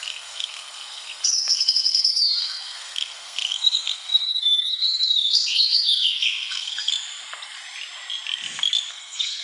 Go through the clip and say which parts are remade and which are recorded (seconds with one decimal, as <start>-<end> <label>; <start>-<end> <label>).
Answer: 0.0-6.9 remade; 6.9-8.9 recorded; 8.9-9.4 remade